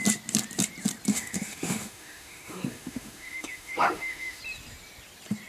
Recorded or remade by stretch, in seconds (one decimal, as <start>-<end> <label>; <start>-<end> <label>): 0.0-1.1 recorded; 1.1-4.4 remade; 4.4-5.5 recorded